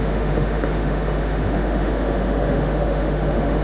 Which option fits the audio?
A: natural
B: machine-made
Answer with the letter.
B